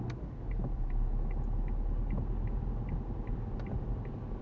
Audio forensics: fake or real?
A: real